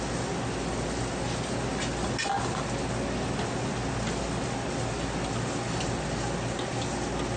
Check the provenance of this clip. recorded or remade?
recorded